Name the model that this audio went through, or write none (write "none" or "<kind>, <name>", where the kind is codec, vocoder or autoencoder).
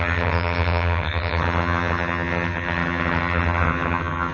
vocoder, HiFi-GAN